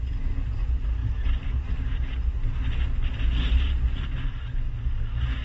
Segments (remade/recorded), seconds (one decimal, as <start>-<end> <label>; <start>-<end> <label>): 0.0-1.0 recorded; 1.0-2.6 remade; 2.6-5.4 recorded